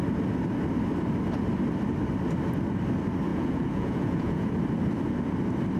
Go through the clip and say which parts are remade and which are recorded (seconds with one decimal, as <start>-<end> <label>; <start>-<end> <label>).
0.0-3.3 recorded; 3.3-4.5 remade; 4.5-5.8 recorded